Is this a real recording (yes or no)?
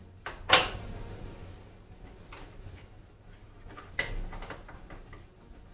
yes